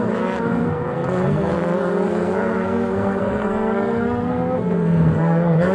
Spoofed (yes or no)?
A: yes